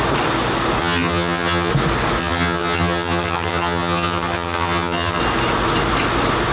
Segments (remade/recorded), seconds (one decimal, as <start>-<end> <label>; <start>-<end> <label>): 0.0-0.8 recorded; 0.8-1.7 remade; 1.7-2.2 recorded; 2.2-5.2 remade; 5.2-6.5 recorded